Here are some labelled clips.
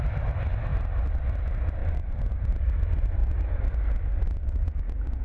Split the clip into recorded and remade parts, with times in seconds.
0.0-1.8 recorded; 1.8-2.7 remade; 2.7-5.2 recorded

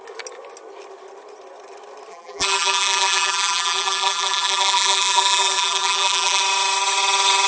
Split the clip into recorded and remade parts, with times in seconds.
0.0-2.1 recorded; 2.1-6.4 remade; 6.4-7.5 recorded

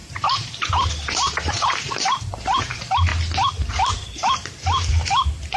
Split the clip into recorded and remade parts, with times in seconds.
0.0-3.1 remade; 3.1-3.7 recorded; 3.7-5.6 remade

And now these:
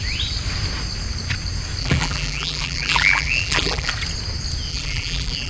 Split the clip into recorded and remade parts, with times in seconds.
0.0-1.8 recorded; 1.8-3.9 remade; 3.9-4.7 recorded; 4.7-5.5 remade

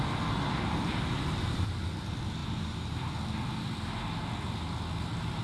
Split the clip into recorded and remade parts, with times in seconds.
0.0-2.4 recorded; 2.4-3.2 remade; 3.2-5.4 recorded